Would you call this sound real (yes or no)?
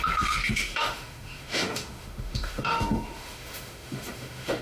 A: no